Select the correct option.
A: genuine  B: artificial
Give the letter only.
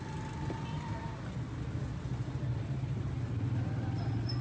A